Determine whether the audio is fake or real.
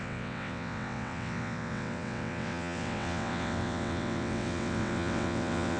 fake